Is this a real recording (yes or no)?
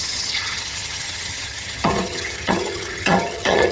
no